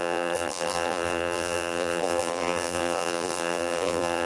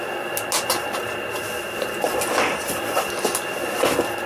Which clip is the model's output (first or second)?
first